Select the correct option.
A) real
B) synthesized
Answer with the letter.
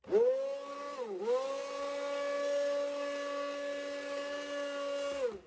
A